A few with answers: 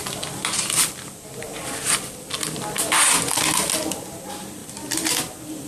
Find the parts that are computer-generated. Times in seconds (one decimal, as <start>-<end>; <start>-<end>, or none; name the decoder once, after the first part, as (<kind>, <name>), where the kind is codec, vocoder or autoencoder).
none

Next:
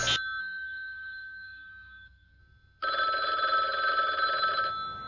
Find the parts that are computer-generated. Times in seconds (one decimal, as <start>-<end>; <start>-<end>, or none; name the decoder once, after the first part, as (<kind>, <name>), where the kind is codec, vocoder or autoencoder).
0.4-2.4 (codec, SNAC)

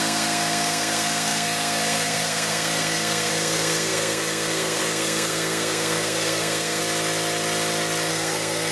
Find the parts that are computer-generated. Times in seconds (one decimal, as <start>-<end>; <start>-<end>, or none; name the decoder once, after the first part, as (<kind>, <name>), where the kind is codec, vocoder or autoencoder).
0.0-6.8 (codec, SNAC); 8.1-8.7

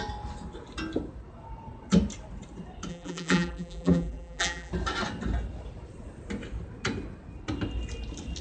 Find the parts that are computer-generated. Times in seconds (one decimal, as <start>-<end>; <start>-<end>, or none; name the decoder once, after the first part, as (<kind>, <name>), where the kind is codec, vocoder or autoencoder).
2.9-4.7 (vocoder, BigVGAN v2)

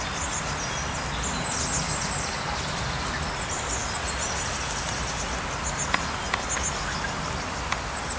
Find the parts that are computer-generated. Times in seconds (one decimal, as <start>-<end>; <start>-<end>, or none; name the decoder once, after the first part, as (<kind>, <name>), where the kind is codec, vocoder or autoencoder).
none